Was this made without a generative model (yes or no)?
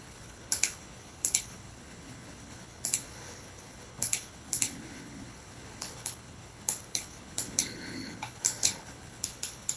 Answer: no